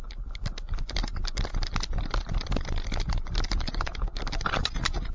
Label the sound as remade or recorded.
recorded